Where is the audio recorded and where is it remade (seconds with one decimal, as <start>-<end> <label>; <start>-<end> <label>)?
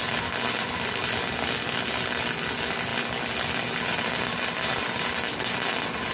0.0-6.1 recorded